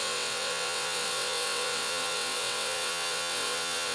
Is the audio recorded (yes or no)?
no